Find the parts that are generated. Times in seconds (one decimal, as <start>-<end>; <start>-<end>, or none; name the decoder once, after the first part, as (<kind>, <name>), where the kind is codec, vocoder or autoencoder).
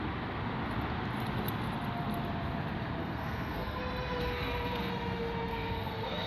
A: 3.0-3.8 (codec, SNAC); 4.2-4.9; 5.5-6.3